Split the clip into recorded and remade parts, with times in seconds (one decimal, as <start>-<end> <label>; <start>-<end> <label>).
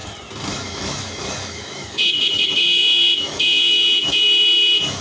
0.0-0.5 recorded; 0.5-5.0 remade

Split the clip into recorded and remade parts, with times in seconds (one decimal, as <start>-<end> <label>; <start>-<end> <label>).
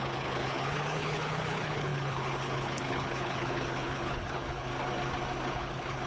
0.0-4.7 remade; 4.7-5.5 recorded; 5.5-6.1 remade